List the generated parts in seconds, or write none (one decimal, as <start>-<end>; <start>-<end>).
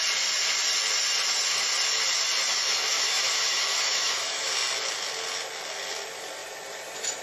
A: 2.5-4.5